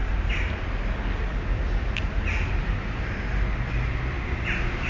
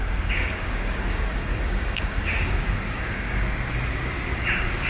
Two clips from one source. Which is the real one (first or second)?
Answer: first